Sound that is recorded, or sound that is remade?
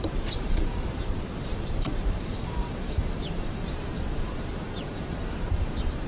remade